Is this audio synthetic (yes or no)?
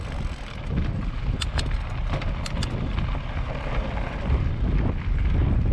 no